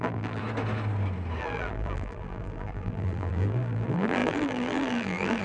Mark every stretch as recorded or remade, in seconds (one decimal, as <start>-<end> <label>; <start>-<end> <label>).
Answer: 0.0-0.4 remade; 0.4-1.4 recorded; 1.4-5.4 remade